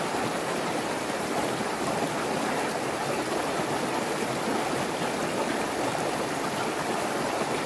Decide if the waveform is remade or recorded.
recorded